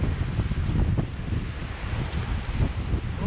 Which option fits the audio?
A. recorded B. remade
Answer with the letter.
A